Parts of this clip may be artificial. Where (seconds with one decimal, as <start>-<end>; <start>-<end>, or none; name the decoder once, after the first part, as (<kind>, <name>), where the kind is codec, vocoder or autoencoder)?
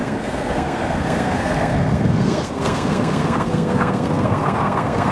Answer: 0.0-5.1 (codec, SNAC)